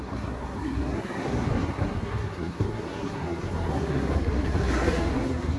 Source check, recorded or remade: remade